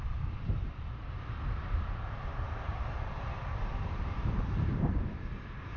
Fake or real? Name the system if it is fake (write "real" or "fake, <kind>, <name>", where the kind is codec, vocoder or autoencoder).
fake, vocoder, BigVGAN v2